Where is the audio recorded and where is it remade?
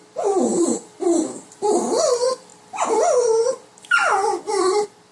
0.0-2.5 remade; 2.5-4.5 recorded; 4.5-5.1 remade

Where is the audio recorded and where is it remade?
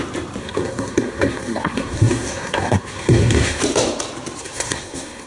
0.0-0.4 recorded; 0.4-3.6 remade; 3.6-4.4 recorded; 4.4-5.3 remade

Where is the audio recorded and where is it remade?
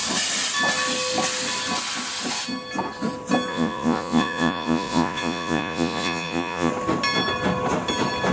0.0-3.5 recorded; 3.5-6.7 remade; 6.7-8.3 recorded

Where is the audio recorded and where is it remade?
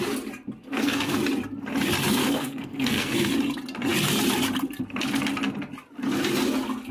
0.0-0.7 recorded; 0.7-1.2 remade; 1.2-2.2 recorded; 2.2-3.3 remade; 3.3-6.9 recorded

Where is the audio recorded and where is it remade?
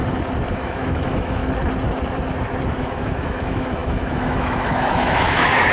0.0-0.5 recorded; 0.5-1.4 remade; 1.4-2.8 recorded; 2.8-5.7 remade